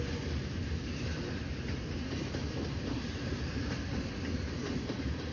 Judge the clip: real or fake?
real